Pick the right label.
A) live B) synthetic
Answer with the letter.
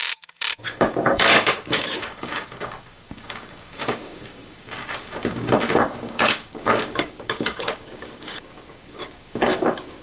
B